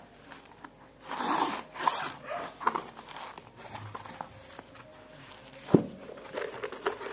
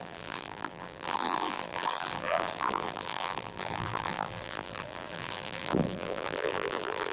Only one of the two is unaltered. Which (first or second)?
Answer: first